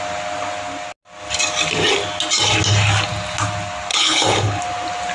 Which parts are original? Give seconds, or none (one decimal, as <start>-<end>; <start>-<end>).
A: 0.0-3.9; 4.6-5.1